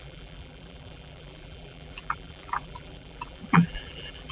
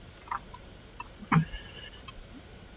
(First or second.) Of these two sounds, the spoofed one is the first